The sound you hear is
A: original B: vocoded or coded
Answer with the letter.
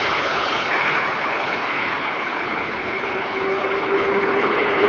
B